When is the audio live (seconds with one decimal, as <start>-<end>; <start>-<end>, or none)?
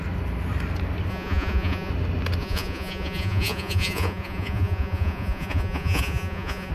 0.0-1.1; 1.9-2.4